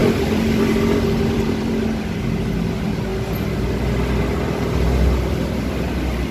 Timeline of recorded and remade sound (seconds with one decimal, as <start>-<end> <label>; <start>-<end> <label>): 0.0-2.2 remade; 2.2-6.3 recorded